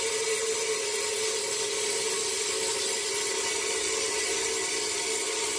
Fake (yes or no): no